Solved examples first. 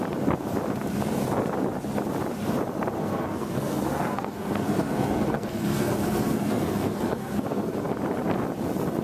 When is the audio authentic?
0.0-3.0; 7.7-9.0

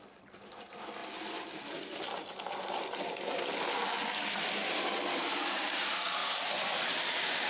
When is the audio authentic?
6.2-6.8

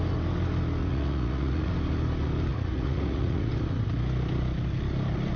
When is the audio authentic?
0.0-0.8; 1.7-2.5; 3.5-5.4